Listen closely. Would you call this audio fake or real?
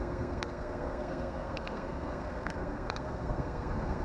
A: fake